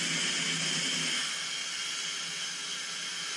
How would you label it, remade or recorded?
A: recorded